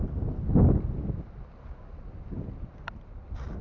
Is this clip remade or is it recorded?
recorded